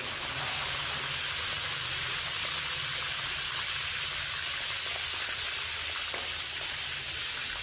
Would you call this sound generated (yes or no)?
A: no